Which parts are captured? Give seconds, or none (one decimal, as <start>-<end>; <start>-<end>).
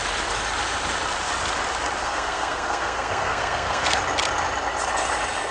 0.0-2.0; 4.0-5.5